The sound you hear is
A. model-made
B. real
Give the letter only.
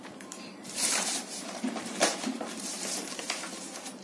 A